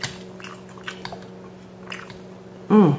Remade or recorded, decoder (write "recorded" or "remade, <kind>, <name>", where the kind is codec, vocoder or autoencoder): recorded